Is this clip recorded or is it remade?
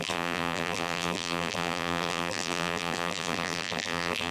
remade